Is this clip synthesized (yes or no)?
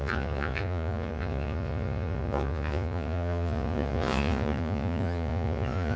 yes